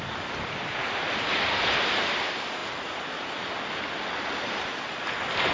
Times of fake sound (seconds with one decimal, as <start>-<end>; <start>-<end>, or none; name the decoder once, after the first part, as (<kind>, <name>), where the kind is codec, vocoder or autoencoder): none